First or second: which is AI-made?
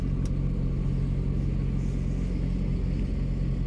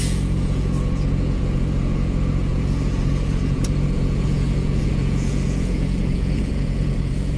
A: second